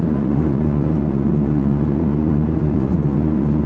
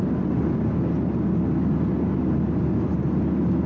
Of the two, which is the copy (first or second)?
first